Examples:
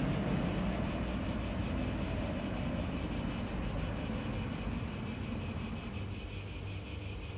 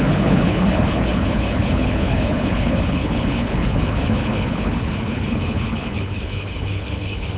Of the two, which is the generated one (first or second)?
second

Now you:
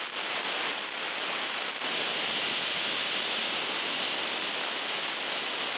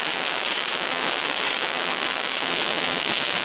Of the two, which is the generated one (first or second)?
second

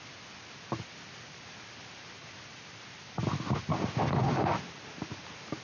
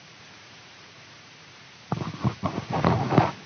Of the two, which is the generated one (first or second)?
second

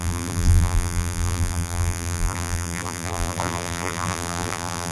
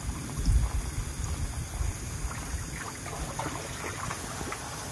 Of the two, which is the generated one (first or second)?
first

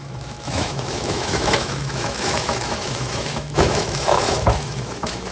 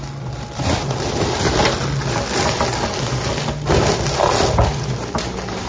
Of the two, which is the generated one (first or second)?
first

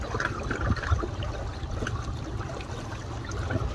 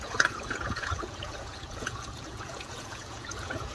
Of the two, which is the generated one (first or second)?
second